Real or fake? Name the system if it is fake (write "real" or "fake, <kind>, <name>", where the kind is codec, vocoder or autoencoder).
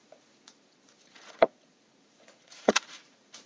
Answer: fake, vocoder, Vocos